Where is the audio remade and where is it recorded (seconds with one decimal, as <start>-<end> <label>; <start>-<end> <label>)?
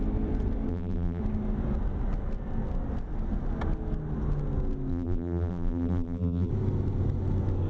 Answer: 0.0-0.7 recorded; 0.7-1.2 remade; 1.2-4.9 recorded; 4.9-6.5 remade; 6.5-7.7 recorded